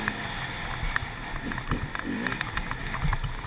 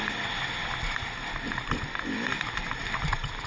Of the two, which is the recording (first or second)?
first